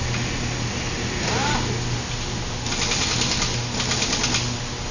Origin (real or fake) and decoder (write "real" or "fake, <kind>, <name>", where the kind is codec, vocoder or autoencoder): real